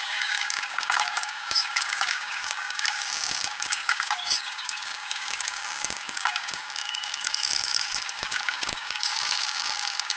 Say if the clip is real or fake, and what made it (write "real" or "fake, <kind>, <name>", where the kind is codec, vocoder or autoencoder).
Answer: fake, codec, DAC